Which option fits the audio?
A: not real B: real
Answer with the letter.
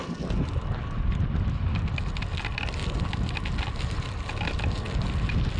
B